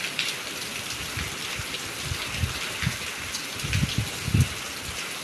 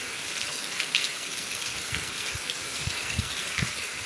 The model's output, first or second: second